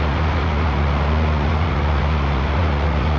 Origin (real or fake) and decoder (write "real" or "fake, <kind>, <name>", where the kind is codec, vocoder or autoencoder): fake, vocoder, Vocos